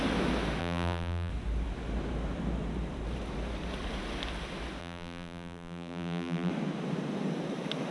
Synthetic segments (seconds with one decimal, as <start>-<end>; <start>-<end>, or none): 0.6-1.3; 4.8-6.5